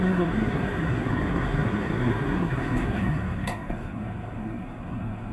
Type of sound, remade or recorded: remade